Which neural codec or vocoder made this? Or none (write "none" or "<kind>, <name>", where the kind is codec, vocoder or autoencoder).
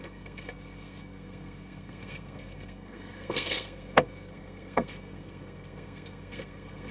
codec, SNAC